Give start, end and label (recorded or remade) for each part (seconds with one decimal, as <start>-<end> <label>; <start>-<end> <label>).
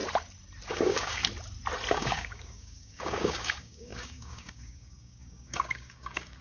0.0-0.7 recorded; 0.7-1.2 remade; 1.2-1.9 recorded; 1.9-6.4 remade